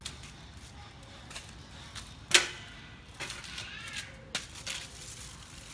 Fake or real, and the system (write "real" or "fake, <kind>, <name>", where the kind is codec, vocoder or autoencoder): real